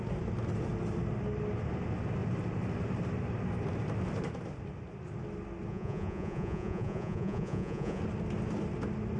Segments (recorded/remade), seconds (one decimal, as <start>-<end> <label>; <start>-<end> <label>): 0.0-5.7 recorded; 5.7-8.0 remade; 8.0-9.2 recorded